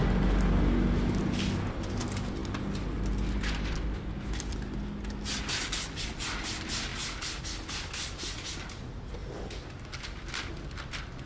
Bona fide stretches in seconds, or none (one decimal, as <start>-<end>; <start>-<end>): 0.0-11.3